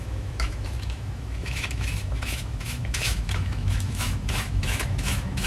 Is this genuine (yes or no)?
no